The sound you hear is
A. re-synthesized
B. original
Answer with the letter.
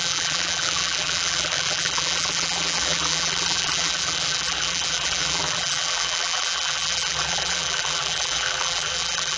A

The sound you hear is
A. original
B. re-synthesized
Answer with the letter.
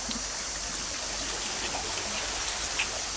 A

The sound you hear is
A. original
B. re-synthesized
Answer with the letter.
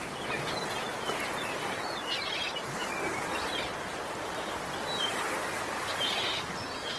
A